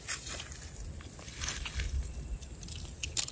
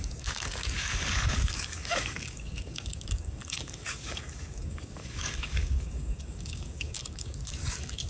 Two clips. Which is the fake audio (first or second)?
second